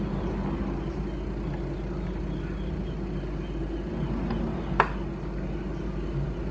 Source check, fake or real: real